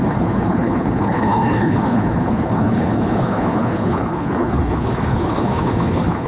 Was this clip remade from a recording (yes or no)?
yes